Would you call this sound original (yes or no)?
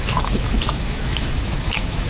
no